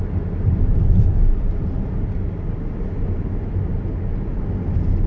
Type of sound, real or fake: real